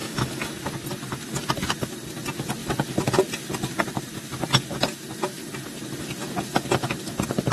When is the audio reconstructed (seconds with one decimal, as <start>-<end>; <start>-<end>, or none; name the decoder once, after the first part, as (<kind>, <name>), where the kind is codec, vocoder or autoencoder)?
0.0-0.6 (autoencoder, DAC-VAE)